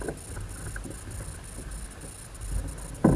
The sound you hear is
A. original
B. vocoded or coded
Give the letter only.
A